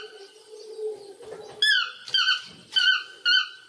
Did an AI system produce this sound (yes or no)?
no